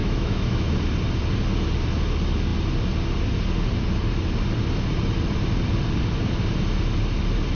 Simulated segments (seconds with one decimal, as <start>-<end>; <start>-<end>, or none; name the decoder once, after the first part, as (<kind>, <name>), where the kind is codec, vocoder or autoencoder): 0.0-0.7 (autoencoder, DAC-VAE)